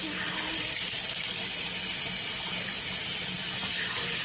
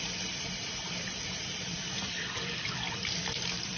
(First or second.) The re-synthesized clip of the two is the second